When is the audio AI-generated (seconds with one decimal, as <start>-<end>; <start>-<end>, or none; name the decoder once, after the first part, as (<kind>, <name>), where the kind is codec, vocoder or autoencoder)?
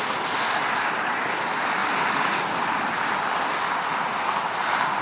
none